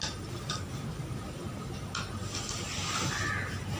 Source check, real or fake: real